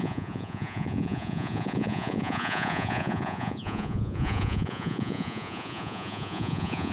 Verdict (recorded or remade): remade